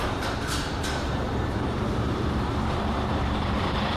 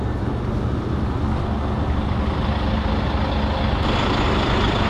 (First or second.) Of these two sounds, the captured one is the second